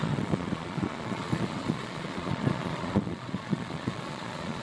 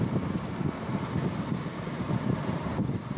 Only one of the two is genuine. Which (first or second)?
second